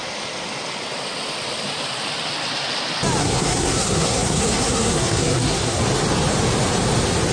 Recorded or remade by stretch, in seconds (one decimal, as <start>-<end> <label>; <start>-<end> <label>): 0.0-3.2 recorded; 3.2-5.8 remade; 5.8-7.3 recorded